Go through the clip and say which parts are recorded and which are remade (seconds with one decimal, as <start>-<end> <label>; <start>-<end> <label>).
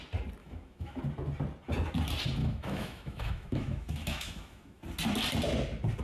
0.0-0.4 recorded; 0.4-1.0 remade; 1.0-2.4 recorded; 2.4-4.8 remade; 4.8-6.0 recorded